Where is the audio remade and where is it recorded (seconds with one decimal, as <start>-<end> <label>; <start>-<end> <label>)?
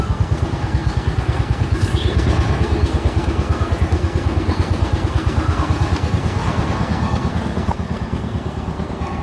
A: 0.0-9.2 remade